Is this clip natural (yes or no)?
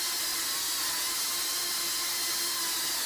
yes